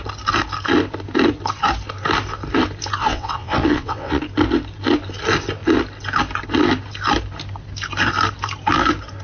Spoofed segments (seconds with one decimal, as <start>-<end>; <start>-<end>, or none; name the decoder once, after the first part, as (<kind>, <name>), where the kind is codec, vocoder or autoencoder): 3.0-4.2 (vocoder, WaveNeXt)